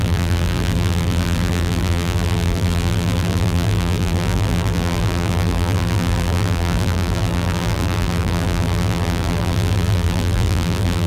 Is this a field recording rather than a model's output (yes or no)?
no